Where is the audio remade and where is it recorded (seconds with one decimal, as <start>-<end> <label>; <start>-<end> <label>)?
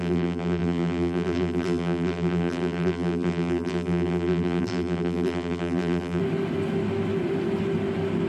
0.0-6.2 remade; 6.2-8.3 recorded